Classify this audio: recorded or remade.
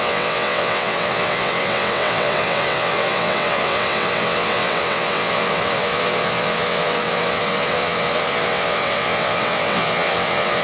remade